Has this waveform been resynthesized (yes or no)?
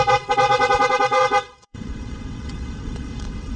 yes